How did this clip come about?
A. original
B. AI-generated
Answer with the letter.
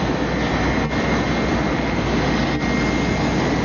A